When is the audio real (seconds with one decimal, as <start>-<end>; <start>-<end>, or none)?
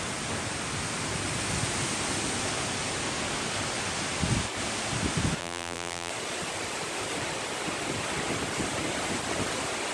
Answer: 0.0-5.4; 6.1-9.9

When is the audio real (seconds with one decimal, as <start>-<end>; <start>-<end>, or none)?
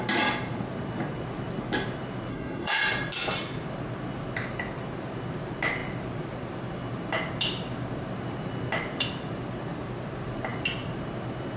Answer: 0.0-2.3; 2.8-11.6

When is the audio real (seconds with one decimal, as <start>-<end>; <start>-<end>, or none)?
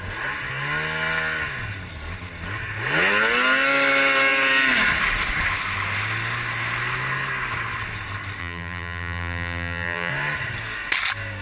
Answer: 0.0-8.4; 10.1-11.4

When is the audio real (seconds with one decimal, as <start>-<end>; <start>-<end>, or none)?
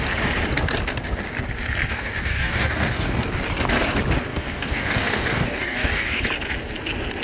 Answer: 0.0-1.9; 3.4-4.3; 6.2-7.2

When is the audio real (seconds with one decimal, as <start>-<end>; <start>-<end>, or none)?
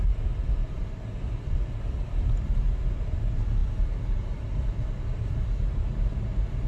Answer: 0.0-6.7